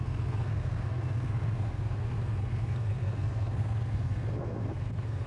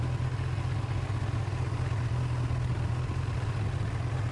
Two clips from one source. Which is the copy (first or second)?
first